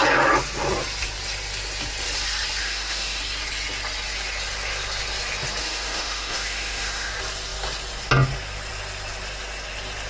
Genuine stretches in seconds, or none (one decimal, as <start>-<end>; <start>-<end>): 0.0-2.6; 3.2-5.6; 7.1-10.1